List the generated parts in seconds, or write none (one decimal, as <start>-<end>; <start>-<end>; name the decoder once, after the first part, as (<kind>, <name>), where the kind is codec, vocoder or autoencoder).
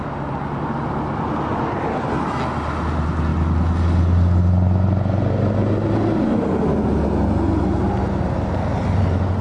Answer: none